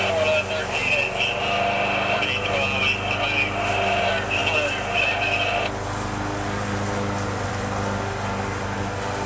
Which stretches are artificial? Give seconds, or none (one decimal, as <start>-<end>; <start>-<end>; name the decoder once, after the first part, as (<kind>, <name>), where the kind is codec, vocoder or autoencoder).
none